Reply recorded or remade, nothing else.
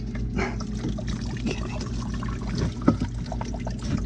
recorded